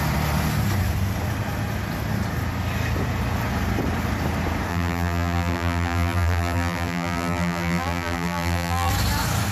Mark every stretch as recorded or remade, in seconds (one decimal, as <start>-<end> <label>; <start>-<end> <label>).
0.0-4.7 recorded; 4.7-8.9 remade; 8.9-9.5 recorded